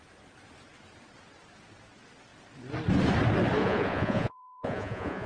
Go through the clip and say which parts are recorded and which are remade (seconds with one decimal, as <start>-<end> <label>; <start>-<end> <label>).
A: 0.0-3.6 recorded; 3.6-5.3 remade